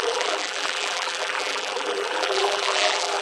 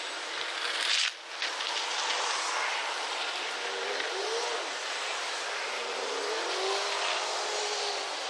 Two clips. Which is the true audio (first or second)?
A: second